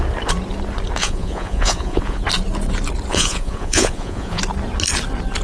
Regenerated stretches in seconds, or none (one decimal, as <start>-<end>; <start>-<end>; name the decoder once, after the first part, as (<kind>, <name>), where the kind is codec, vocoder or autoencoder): 1.0-2.2 (vocoder, Vocos); 3.1-4.4